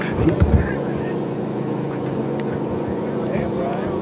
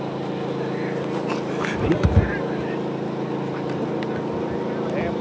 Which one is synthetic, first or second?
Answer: first